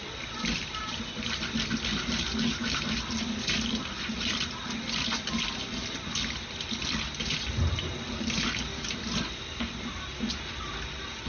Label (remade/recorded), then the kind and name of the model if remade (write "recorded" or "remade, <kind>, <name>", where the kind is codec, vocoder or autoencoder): recorded